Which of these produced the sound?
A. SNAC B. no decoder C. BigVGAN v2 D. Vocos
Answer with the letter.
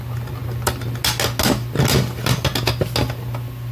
B